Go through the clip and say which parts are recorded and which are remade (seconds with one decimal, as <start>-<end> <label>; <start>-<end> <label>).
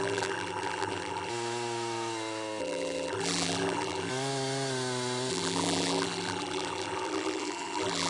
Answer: 0.0-1.3 remade; 1.3-2.6 recorded; 2.6-4.1 remade; 4.1-5.3 recorded; 5.3-8.1 remade